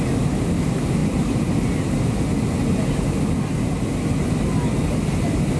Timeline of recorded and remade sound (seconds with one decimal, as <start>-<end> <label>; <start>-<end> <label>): 0.0-5.6 recorded